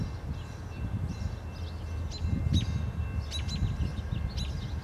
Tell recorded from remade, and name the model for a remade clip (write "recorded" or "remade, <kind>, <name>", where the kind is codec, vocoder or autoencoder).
recorded